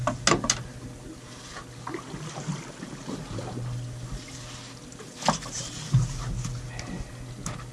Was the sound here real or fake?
real